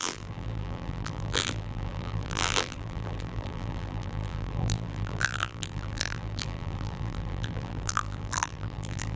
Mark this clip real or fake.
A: fake